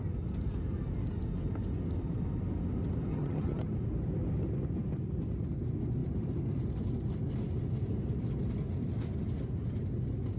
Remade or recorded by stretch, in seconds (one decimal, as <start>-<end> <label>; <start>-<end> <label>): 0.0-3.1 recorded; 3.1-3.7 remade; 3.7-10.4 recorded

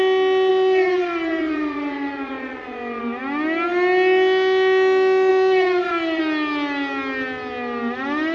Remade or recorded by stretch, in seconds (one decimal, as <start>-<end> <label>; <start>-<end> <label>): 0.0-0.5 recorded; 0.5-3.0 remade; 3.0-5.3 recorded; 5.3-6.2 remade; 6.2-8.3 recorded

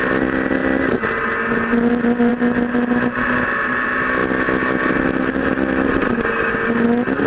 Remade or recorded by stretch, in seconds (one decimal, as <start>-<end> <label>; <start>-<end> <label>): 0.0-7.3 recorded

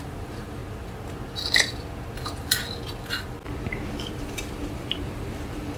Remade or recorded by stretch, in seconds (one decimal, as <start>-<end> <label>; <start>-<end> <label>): 0.0-0.6 remade; 0.6-4.1 recorded; 4.1-5.8 remade